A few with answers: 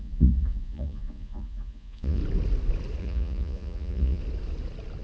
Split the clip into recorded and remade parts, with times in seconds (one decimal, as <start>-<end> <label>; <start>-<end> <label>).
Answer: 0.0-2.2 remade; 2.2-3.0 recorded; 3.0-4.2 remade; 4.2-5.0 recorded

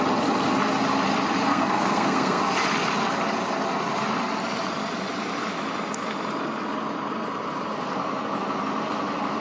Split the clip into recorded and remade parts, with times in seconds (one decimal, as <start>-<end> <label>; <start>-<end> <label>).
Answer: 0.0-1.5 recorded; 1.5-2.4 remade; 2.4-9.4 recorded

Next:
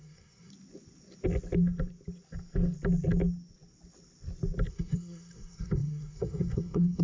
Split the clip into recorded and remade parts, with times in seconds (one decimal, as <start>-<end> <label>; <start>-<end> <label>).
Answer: 0.0-0.5 remade; 0.5-4.7 recorded; 4.7-7.0 remade

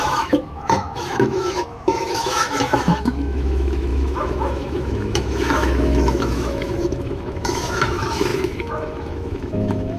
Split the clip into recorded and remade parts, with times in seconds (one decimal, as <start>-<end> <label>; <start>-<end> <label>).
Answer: 0.0-10.0 remade

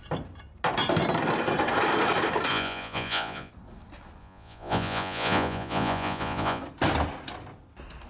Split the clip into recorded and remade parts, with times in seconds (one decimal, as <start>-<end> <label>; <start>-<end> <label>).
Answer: 0.0-2.5 recorded; 2.5-3.5 remade; 3.5-4.2 recorded; 4.2-6.6 remade; 6.6-8.1 recorded

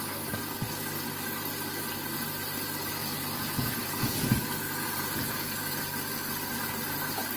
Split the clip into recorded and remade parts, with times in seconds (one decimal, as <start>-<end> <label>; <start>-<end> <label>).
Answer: 0.0-3.0 recorded; 3.0-5.8 remade; 5.8-7.4 recorded

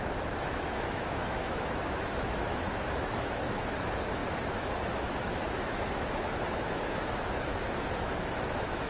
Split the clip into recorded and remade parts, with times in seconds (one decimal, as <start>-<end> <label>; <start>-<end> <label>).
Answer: 0.0-8.9 remade